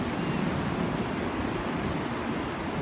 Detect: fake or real real